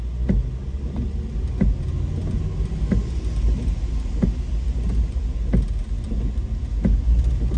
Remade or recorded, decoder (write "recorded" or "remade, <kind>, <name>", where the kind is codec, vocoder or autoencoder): recorded